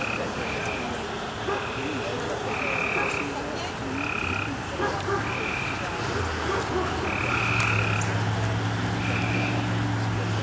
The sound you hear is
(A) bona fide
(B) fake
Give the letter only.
A